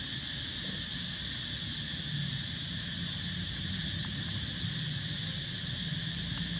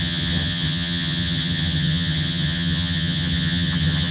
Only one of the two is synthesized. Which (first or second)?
second